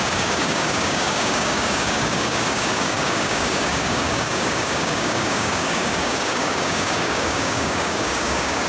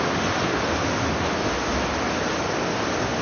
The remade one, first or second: first